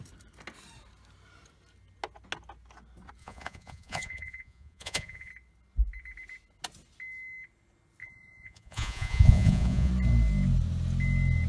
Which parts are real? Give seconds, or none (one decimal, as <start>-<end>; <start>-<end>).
0.0-3.2; 5.3-8.0; 9.9-11.5